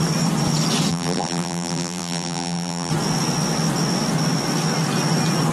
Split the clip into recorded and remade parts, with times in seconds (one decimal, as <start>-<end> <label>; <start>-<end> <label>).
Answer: 0.0-0.9 recorded; 0.9-2.9 remade; 2.9-5.5 recorded